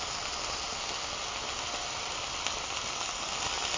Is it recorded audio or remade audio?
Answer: recorded